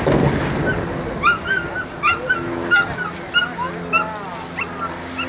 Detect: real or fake real